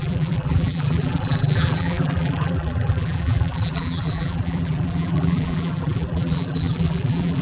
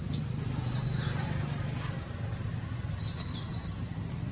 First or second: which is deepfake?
first